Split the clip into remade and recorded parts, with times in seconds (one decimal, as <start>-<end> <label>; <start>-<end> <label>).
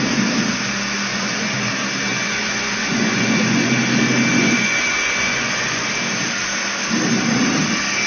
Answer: 0.0-1.1 recorded; 1.1-1.7 remade; 1.7-2.1 recorded; 2.1-3.7 remade; 3.7-4.3 recorded; 4.3-5.9 remade; 5.9-8.1 recorded